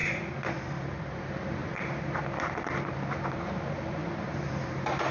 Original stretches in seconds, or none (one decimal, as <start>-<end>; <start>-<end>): 1.6-2.7